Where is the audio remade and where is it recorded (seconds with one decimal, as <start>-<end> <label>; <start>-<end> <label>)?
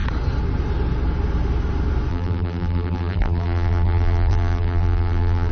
0.0-2.1 recorded; 2.1-5.5 remade